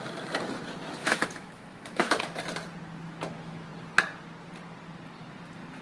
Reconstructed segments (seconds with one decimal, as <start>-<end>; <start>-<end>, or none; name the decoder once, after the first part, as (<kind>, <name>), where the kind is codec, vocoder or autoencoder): 1.0-2.2 (autoencoder, DAC-VAE)